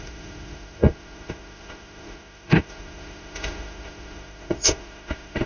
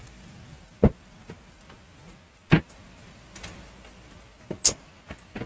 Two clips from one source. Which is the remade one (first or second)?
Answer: first